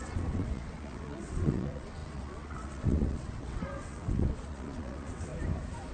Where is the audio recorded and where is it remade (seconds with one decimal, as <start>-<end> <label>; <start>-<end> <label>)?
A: 0.0-5.3 remade; 5.3-5.9 recorded